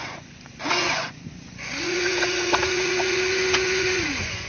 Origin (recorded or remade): remade